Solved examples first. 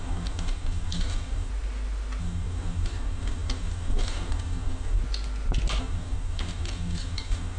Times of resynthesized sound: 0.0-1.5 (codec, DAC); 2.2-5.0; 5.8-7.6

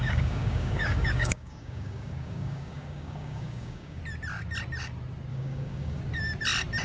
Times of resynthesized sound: 0.0-4.0 (codec, DAC); 5.3-6.0

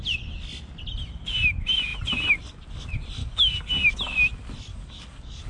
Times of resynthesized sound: 3.2-3.9 (codec, DAC); 4.7-5.5

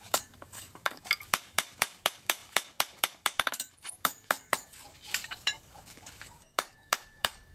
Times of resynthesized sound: 0.0-7.5 (codec, DAC)

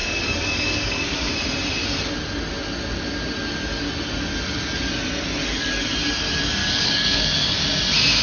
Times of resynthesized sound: 0.0-1.3 (codec, DAC); 6.6-7.6

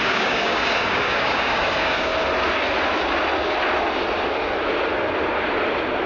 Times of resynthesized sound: 0.0-2.1 (codec, DAC)

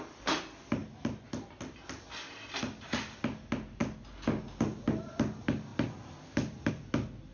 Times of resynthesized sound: none

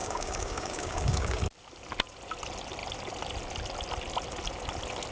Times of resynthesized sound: 0.0-1.4 (codec, DAC)